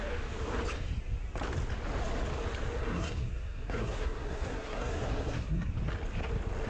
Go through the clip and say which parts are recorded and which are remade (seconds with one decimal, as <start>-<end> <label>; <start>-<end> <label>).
0.0-2.8 recorded; 2.8-5.7 remade; 5.7-6.7 recorded